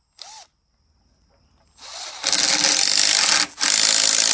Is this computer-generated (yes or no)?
no